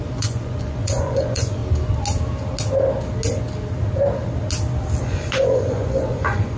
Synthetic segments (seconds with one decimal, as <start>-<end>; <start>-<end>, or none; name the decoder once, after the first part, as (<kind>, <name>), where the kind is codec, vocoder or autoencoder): 0.0-1.6 (vocoder, Vocos); 5.0-6.6